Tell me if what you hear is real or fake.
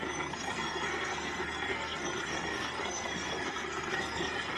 fake